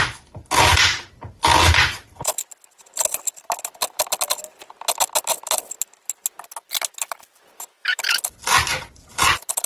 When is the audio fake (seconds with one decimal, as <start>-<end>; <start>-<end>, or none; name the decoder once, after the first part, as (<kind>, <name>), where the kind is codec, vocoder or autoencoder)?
7.7-8.2 (autoencoder, DAC-VAE)